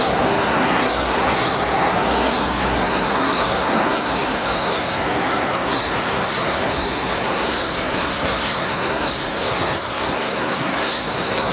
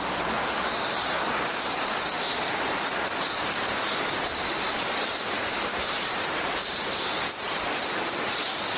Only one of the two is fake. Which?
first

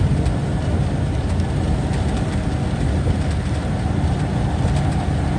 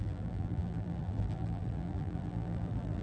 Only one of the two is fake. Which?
second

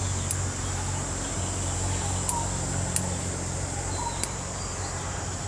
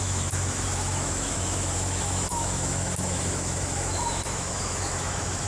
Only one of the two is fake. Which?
second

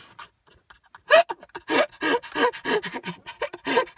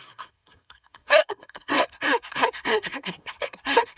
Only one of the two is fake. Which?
second